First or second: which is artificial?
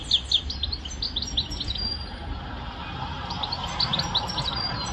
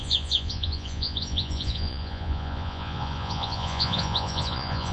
second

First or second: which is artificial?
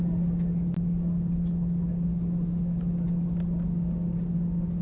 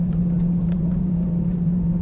second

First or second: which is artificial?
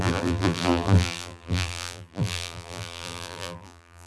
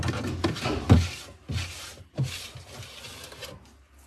first